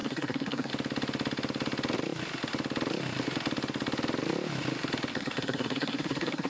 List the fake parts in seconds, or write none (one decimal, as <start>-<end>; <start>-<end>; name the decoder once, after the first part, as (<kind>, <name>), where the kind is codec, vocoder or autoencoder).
0.0-0.7 (codec, SNAC); 5.1-6.5

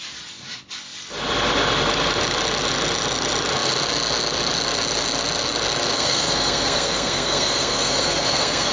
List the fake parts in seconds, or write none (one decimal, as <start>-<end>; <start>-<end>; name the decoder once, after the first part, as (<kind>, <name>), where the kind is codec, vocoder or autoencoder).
5.9-8.7 (codec, SNAC)

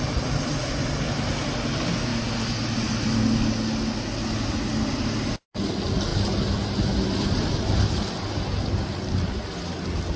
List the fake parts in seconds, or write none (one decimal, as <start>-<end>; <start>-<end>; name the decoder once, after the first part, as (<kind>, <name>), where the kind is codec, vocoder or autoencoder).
none

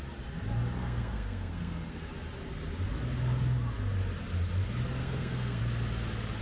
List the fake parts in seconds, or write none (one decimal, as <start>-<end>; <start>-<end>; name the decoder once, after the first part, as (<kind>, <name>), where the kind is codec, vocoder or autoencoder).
0.8-2.1 (codec, SNAC); 5.0-5.6

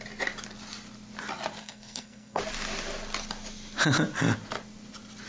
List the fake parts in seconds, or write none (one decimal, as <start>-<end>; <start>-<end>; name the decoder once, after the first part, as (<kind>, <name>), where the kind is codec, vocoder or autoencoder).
1.6-2.4 (codec, SNAC)